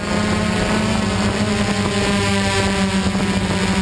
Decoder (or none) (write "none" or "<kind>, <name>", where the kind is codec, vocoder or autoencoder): none